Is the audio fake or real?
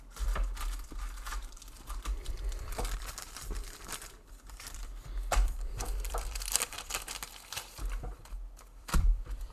fake